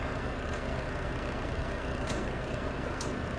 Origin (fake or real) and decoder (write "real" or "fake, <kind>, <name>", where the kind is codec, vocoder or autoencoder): fake, codec, SNAC